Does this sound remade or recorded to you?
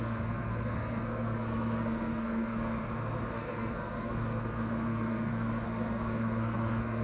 remade